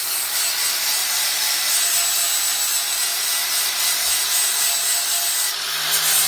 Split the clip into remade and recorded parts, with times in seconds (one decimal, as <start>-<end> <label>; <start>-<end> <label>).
0.0-6.3 recorded